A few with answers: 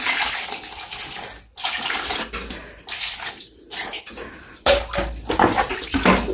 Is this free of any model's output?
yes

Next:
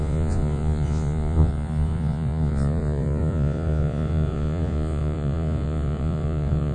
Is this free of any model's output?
no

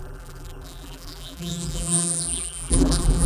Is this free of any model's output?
no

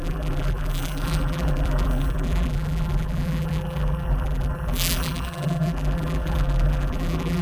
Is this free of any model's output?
no